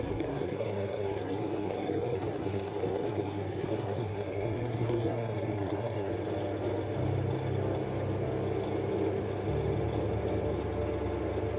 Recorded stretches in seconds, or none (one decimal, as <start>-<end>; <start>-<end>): 6.1-11.6